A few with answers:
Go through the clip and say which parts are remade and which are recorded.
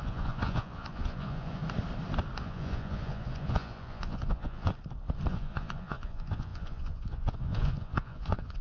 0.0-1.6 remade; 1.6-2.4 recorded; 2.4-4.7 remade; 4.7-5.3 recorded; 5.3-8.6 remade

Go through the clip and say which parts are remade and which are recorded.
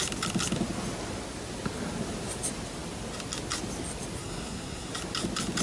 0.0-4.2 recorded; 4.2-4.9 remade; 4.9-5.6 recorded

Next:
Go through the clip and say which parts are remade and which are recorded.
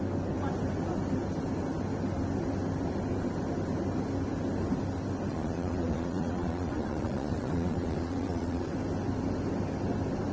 0.0-5.3 recorded; 5.3-8.7 remade; 8.7-10.3 recorded